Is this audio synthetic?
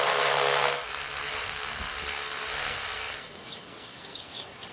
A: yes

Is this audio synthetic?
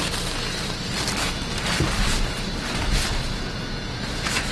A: no